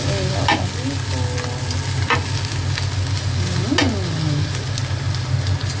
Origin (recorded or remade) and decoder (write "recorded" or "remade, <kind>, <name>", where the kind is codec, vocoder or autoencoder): recorded